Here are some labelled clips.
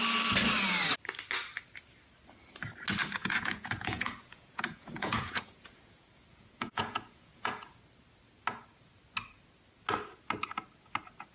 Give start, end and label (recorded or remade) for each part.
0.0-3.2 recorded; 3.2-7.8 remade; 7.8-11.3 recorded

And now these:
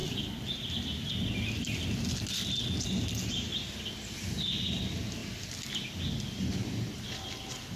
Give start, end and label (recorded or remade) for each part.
0.0-7.8 recorded